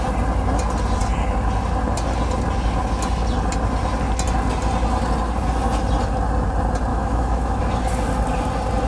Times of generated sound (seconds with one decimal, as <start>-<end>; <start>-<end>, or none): 6.9-7.6